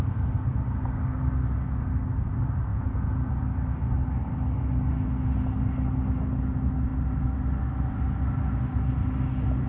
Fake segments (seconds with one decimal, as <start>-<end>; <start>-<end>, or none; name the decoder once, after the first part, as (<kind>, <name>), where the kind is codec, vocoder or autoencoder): 2.7-3.3 (vocoder, Vocos)